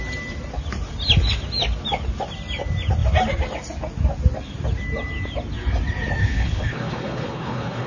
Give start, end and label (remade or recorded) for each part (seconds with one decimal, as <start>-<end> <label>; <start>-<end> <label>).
0.0-6.2 recorded; 6.2-7.9 remade